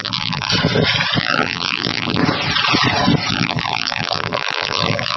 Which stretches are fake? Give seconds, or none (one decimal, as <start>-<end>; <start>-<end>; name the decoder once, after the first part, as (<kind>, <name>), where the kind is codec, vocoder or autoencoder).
0.0-0.5 (vocoder, BigVGAN v2); 1.2-2.2; 3.3-5.2